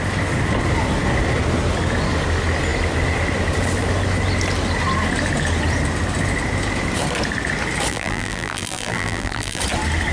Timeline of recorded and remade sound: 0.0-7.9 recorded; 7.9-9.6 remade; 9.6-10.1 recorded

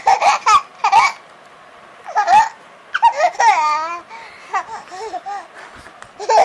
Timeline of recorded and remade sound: 0.0-6.4 recorded

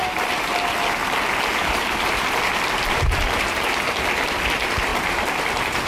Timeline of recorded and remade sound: 0.0-5.9 recorded

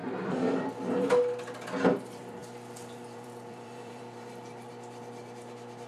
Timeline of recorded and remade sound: 0.0-1.9 recorded; 1.9-5.9 remade

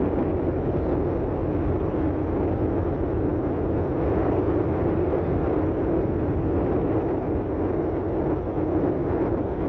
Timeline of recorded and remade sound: 0.0-9.7 recorded